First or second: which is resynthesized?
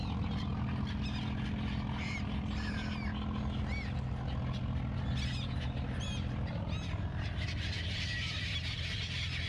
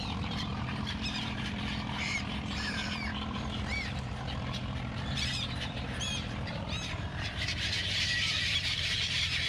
second